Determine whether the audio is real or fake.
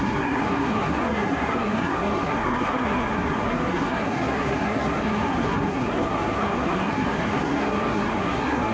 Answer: fake